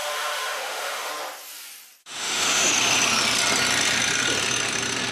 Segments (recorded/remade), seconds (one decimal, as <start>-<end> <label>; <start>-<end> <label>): 0.0-1.1 remade; 1.1-2.0 recorded; 2.0-2.7 remade; 2.7-5.1 recorded